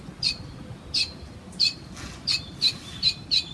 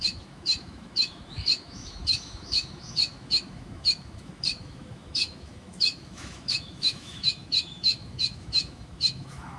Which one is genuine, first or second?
first